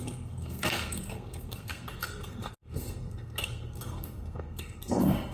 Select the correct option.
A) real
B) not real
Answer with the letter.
B